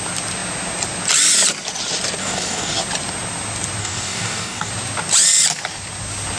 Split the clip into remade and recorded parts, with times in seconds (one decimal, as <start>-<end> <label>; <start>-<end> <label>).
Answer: 0.0-2.2 recorded; 2.2-2.8 remade; 2.8-3.8 recorded; 3.8-4.7 remade; 4.7-6.4 recorded